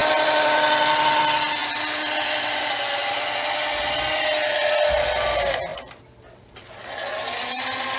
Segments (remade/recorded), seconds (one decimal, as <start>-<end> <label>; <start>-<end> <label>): 0.0-8.0 recorded